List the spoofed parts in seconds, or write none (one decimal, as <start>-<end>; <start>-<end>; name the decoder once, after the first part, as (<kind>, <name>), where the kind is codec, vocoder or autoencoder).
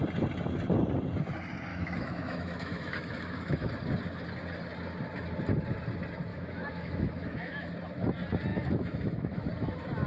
1.7-3.7 (autoencoder, DAC-VAE); 6.3-7.7; 8.5-9.4